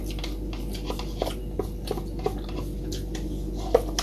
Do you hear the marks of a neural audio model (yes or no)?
no